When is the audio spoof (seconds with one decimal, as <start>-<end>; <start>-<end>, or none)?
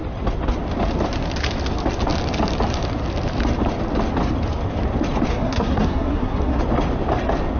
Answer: 5.3-6.6